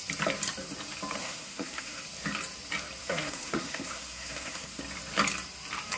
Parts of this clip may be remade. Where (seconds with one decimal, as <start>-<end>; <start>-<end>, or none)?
1.2-2.0; 3.0-4.8